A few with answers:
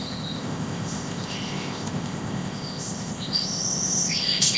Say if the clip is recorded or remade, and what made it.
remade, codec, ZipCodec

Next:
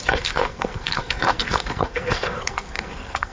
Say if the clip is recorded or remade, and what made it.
remade, codec, SNAC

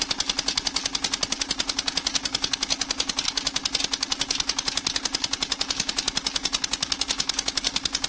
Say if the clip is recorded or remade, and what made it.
recorded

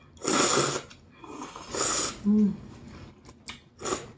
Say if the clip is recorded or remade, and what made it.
recorded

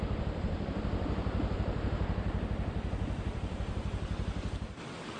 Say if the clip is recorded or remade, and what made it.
remade, vocoder, BigVGAN v2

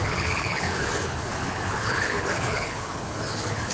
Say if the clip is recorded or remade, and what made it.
remade, codec, HILCodec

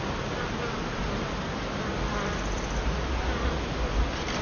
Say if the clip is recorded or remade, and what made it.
recorded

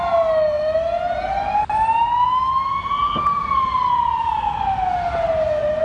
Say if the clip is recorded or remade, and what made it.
recorded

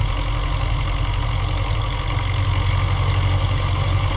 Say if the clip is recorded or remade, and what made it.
recorded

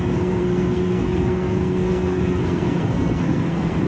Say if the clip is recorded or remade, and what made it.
remade, codec, SNAC